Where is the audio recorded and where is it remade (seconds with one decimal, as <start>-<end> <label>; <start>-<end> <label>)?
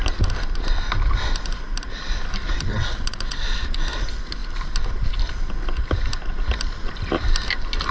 0.0-2.7 recorded; 2.7-3.4 remade; 3.4-7.9 recorded